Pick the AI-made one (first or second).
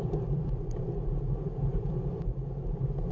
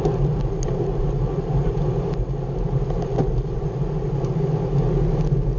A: first